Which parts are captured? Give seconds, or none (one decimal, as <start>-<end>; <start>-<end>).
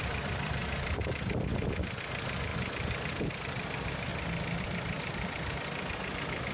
4.1-4.6